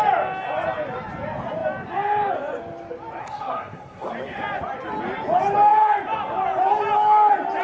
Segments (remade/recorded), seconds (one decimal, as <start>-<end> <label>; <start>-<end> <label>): 0.0-3.2 recorded; 3.2-4.1 remade; 4.1-7.6 recorded